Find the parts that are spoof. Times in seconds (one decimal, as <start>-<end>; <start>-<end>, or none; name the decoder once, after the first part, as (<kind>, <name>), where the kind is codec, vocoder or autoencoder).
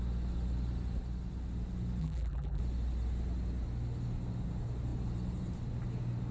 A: 2.0-2.6 (vocoder, BigVGAN v2)